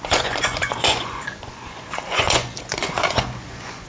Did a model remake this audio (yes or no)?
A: yes